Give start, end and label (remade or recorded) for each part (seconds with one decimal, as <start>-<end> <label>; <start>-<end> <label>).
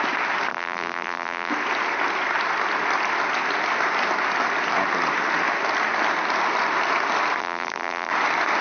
0.0-0.5 recorded; 0.5-1.5 remade; 1.5-7.4 recorded; 7.4-8.1 remade; 8.1-8.6 recorded